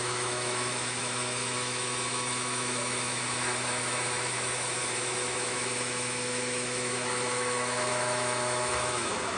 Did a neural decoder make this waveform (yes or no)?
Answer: yes